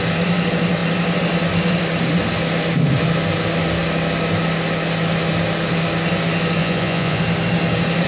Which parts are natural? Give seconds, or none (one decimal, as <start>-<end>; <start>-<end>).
0.0-6.6; 7.2-8.1